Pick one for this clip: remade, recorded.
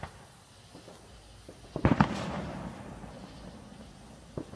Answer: recorded